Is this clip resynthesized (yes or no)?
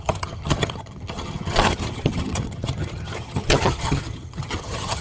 yes